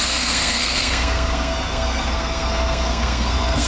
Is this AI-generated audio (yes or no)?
yes